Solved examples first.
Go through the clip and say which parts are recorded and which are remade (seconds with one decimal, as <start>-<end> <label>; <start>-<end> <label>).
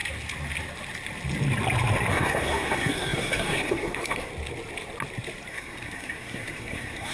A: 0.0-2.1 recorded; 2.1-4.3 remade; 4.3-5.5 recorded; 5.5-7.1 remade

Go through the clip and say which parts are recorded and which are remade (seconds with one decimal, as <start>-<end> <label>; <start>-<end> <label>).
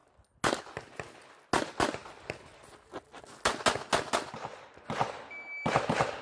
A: 0.0-6.2 recorded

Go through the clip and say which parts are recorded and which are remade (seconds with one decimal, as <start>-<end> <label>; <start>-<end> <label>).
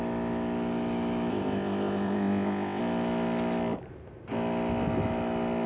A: 0.0-1.3 recorded; 1.3-2.8 remade; 2.8-5.7 recorded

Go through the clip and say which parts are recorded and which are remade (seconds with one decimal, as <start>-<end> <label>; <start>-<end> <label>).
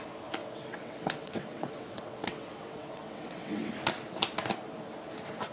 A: 0.0-0.4 recorded; 0.4-3.7 remade; 3.7-5.5 recorded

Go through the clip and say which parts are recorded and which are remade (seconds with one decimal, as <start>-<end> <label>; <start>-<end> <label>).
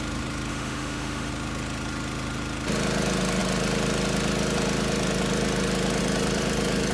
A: 0.0-0.5 recorded; 0.5-1.3 remade; 1.3-6.9 recorded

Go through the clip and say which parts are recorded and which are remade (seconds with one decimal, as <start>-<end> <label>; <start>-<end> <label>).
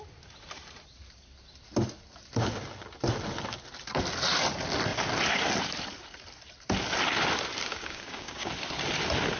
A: 0.0-7.7 recorded; 7.7-8.5 remade; 8.5-9.4 recorded